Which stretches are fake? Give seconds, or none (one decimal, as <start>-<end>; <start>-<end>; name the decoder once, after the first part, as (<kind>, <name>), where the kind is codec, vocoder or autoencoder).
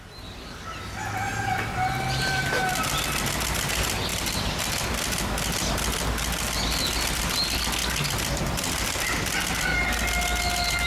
4.1-4.6 (vocoder, BigVGAN v2)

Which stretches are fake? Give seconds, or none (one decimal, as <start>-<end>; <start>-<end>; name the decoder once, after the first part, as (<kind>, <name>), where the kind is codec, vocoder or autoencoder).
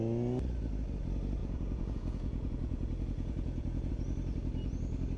1.4-3.9 (vocoder, Vocos)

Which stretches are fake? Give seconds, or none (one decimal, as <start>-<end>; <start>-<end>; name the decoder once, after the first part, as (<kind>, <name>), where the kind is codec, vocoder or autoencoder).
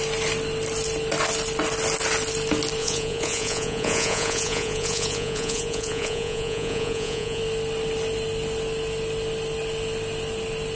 2.8-7.4 (vocoder, Vocos)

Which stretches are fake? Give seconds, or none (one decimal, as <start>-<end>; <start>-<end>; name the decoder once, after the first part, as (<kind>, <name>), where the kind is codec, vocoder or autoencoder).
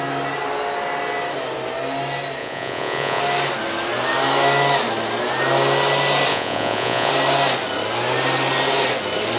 2.4-3.2 (vocoder, Vocos); 6.3-7.1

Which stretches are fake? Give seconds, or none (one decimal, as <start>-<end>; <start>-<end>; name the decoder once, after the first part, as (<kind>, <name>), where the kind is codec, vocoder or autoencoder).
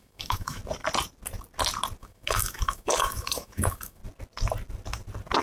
0.0-0.6 (autoencoder, DAC-VAE); 2.0-4.0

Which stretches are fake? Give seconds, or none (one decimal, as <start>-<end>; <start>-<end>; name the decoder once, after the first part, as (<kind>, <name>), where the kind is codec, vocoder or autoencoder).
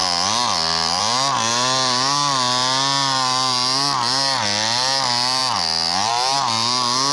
0.0-1.0 (vocoder, BigVGAN v2)